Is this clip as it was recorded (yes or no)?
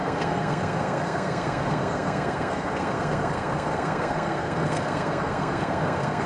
no